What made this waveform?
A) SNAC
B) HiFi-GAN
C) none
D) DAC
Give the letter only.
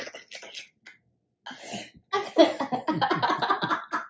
C